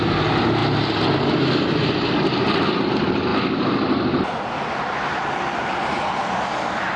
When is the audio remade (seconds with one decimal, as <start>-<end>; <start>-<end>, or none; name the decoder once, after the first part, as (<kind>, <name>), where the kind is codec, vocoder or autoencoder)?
none